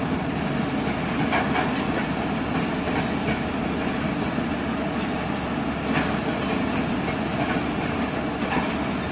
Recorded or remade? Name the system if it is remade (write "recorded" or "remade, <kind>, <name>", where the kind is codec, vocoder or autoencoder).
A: recorded